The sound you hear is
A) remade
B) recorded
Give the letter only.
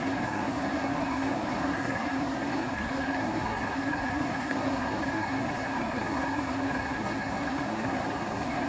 A